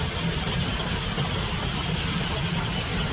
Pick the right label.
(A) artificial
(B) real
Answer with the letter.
A